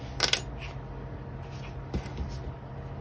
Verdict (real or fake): real